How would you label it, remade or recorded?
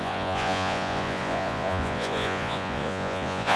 remade